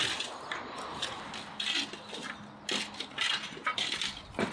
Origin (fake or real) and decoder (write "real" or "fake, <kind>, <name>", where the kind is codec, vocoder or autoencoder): real